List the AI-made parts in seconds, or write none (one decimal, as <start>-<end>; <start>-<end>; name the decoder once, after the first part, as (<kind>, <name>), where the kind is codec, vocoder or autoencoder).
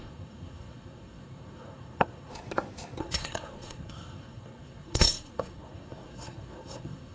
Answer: 0.0-2.3 (codec, SNAC); 3.0-7.1